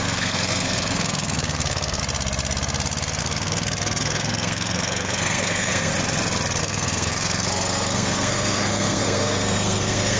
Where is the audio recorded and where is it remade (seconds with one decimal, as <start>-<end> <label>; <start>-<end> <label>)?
0.0-2.0 remade; 2.0-3.2 recorded; 3.2-5.9 remade; 5.9-6.6 recorded; 6.6-10.2 remade

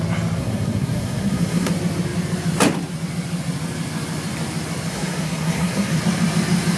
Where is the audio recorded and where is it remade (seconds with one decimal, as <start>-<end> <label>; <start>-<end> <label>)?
0.0-0.4 recorded; 0.4-1.7 remade; 1.7-4.9 recorded; 4.9-6.0 remade; 6.0-6.8 recorded

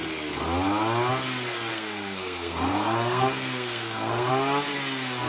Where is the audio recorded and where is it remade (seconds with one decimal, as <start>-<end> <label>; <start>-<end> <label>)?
0.0-1.7 recorded; 1.7-4.3 remade; 4.3-5.3 recorded

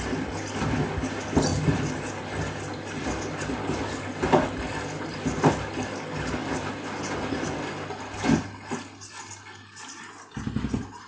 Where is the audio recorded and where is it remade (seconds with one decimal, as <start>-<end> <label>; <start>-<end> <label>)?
0.0-11.1 recorded

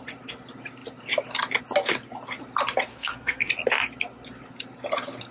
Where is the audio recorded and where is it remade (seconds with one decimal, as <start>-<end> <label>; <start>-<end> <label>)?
0.0-2.9 recorded; 2.9-3.5 remade; 3.5-5.3 recorded

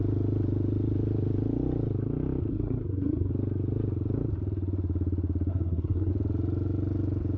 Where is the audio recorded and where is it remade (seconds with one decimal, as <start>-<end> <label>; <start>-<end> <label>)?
0.0-2.5 recorded; 2.5-3.3 remade; 3.3-5.5 recorded; 5.5-6.1 remade; 6.1-7.4 recorded

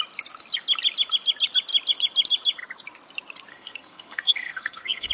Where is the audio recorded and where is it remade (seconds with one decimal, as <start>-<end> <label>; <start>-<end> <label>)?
0.0-3.5 recorded; 3.5-5.1 remade

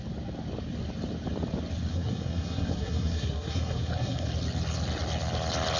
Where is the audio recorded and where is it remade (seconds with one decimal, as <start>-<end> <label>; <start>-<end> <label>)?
0.0-1.9 recorded; 1.9-4.3 remade; 4.3-5.8 recorded